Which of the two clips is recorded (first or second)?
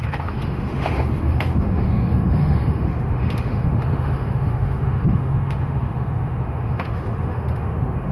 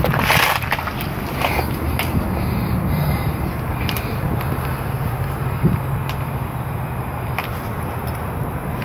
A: second